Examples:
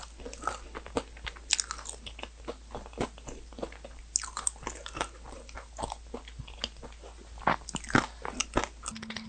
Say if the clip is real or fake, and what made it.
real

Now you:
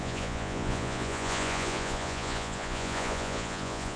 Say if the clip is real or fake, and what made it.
fake, vocoder, Vocos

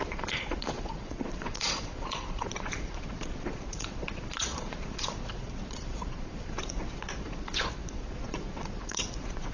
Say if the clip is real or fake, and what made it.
fake, vocoder, Vocos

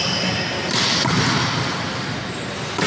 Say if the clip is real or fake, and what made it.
real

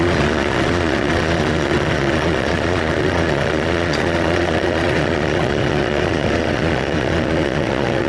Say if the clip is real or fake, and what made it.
fake, vocoder, Vocos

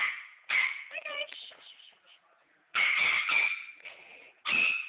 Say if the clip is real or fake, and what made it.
fake, vocoder, Vocos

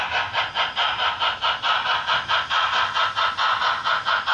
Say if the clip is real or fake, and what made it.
real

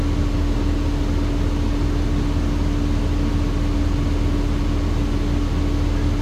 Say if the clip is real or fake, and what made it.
real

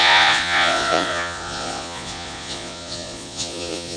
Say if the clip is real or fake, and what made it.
fake, vocoder, Vocos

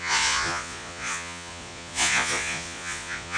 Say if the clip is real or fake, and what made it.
fake, vocoder, Vocos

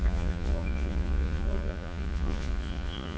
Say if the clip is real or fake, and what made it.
fake, vocoder, Vocos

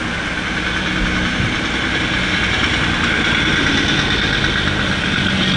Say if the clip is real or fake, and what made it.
real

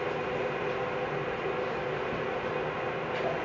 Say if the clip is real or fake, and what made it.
real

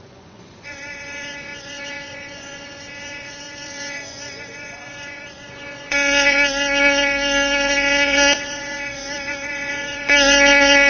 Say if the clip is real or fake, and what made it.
fake, vocoder, Vocos